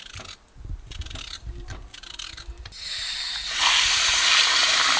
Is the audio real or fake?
real